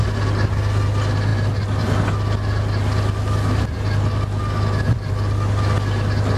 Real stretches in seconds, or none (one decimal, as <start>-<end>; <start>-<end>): 0.0-6.4